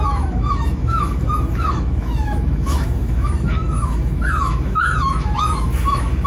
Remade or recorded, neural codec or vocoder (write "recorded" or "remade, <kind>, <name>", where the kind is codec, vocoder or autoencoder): remade, autoencoder, DAC-VAE